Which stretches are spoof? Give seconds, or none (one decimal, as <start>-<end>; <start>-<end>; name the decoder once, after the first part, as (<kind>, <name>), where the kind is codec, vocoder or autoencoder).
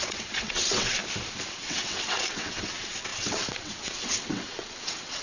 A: 0.0-1.0 (vocoder, WaveNeXt); 1.5-5.2